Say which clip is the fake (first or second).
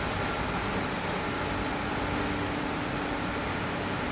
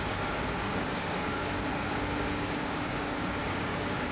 second